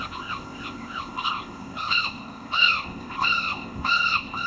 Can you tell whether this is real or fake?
fake